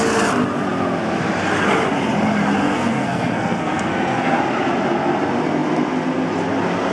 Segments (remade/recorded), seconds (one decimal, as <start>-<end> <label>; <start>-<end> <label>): 0.0-2.6 recorded; 2.6-4.4 remade; 4.4-6.9 recorded